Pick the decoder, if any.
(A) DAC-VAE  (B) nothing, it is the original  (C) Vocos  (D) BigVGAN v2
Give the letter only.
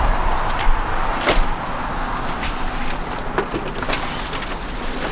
B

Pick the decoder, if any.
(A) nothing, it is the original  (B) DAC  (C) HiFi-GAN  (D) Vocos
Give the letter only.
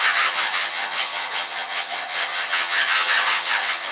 C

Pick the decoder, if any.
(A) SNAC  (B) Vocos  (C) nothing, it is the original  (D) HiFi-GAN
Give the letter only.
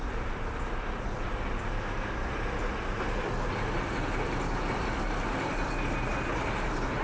C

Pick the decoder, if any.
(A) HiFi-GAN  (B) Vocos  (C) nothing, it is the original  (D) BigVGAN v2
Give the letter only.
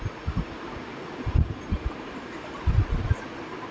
C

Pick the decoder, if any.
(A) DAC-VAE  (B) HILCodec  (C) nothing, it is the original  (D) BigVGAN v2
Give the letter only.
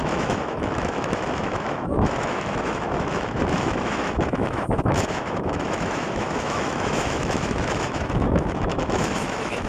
A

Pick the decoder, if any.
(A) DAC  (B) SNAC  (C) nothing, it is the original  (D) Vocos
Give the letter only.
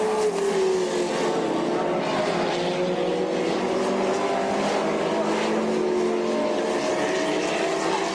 C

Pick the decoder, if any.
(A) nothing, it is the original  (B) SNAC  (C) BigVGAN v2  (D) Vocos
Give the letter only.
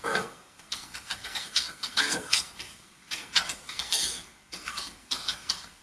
B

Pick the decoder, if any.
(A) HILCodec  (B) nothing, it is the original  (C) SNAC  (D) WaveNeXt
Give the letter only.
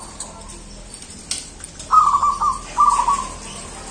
B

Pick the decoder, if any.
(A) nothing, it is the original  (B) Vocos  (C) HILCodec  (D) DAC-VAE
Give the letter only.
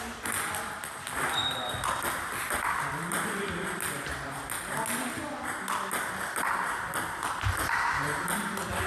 A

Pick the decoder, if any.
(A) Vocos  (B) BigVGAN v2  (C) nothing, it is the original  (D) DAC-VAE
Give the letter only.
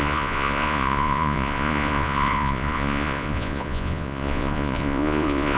A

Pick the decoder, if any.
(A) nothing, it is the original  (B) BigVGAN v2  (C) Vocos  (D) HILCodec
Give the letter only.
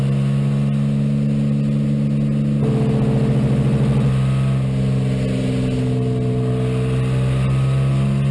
A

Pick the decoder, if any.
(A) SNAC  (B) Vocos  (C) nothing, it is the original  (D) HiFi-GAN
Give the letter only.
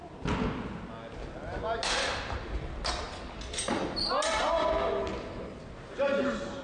C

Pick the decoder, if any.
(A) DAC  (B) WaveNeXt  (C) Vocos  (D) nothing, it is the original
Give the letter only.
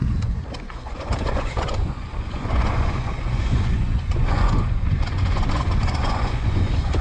C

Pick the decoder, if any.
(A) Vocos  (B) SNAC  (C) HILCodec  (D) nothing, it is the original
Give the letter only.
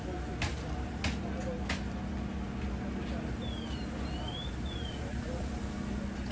D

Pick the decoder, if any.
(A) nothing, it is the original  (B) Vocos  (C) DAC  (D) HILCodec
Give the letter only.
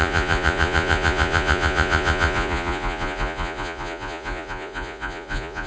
B